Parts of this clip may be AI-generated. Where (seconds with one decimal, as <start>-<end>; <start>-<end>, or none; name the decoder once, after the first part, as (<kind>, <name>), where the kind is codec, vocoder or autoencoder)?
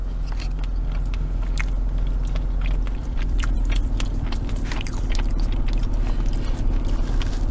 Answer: 3.0-5.0 (vocoder, BigVGAN v2)